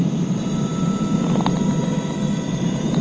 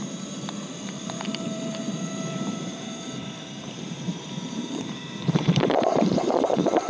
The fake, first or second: second